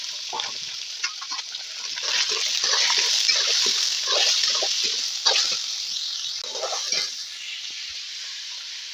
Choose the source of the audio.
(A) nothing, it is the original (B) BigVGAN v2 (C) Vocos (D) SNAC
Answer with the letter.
A